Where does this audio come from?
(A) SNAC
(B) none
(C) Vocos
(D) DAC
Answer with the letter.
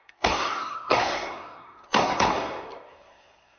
A